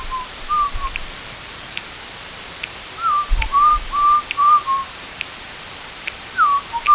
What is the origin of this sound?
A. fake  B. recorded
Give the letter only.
A